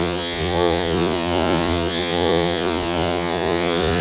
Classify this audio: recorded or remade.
remade